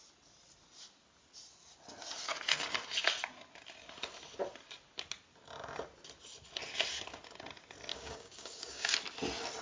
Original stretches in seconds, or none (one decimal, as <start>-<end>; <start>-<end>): 0.0-7.9; 8.9-9.6